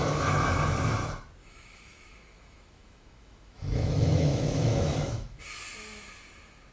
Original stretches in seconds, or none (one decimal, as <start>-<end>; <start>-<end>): 0.0-1.4; 5.4-6.7